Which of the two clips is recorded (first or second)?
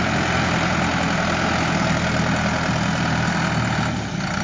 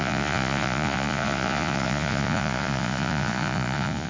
first